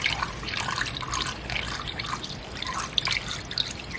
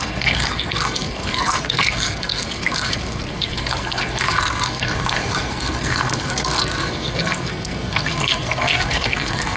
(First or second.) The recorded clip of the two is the first